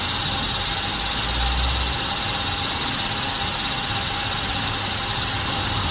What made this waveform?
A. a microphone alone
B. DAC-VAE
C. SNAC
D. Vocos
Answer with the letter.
A